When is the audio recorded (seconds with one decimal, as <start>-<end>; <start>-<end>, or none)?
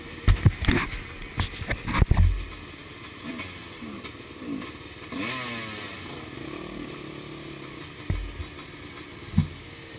0.0-10.0